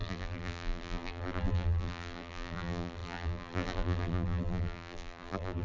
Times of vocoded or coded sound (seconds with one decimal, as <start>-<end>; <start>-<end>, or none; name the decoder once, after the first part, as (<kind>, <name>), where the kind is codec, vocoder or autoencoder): 0.0-5.6 (vocoder, BigVGAN v2)